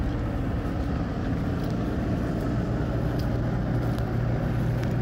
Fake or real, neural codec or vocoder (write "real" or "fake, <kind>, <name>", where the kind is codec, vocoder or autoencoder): real